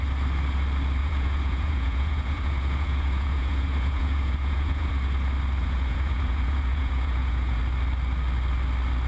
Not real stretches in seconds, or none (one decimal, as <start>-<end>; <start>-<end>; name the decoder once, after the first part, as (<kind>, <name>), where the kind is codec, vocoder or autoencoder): 1.0-4.9 (vocoder, Vocos); 5.6-7.6